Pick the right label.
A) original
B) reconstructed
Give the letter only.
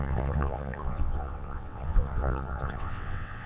B